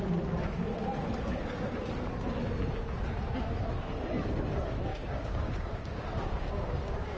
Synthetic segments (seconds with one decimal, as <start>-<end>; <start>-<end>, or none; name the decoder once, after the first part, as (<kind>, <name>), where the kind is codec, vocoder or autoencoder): 4.9-7.2 (codec, DAC)